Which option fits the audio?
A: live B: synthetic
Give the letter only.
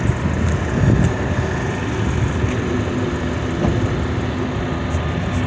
A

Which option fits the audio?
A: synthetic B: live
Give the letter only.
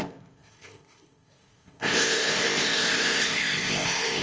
A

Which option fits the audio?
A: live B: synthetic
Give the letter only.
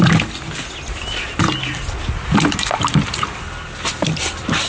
A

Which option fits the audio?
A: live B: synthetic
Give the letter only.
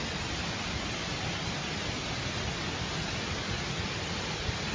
A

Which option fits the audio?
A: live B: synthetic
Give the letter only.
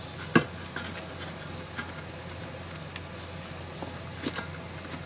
A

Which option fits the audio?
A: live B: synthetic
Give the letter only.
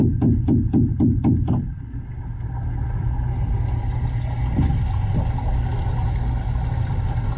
A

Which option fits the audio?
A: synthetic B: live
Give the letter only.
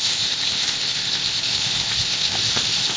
A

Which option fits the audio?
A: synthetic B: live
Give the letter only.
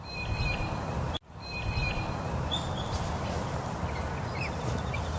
B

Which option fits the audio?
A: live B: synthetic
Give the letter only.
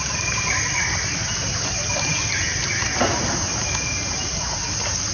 A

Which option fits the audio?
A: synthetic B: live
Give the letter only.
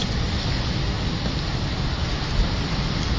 B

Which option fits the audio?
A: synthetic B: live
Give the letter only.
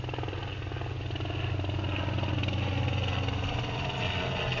B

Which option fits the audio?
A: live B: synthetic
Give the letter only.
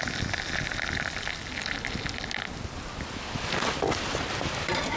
A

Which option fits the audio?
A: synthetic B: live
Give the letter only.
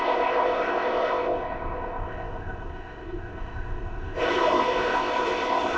A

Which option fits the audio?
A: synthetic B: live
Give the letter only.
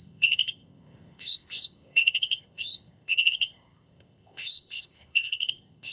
A